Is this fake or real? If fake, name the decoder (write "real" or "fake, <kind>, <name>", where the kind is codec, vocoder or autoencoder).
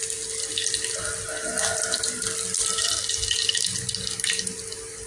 real